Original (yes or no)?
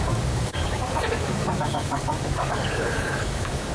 no